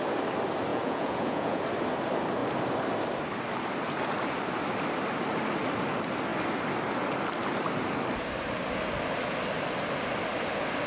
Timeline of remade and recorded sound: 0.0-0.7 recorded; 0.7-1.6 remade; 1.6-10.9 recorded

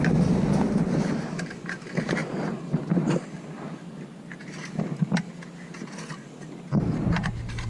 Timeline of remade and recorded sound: 0.0-7.7 recorded

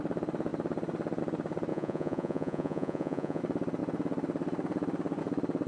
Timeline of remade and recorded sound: 0.0-1.7 recorded; 1.7-3.4 remade; 3.4-5.7 recorded

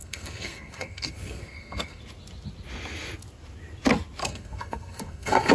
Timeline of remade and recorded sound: 0.0-2.0 remade; 2.0-4.2 recorded; 4.2-5.5 remade